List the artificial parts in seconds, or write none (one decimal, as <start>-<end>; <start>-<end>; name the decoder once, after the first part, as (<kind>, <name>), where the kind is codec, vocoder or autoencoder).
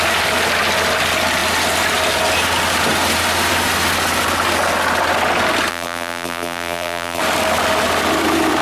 5.7-7.2 (vocoder, BigVGAN v2)